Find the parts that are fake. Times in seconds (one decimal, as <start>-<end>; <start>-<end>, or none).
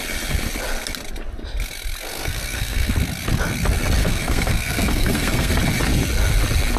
2.1-2.9; 4.0-5.5